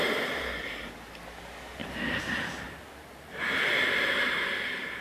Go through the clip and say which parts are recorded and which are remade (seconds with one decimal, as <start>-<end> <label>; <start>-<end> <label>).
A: 0.0-1.8 recorded; 1.8-5.0 remade